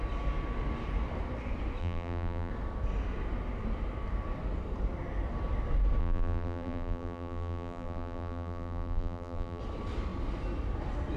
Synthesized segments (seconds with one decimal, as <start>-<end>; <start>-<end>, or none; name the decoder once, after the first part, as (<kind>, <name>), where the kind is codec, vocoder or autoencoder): 1.8-2.5 (vocoder, BigVGAN v2); 6.0-9.6